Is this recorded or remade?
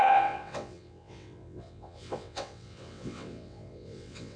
remade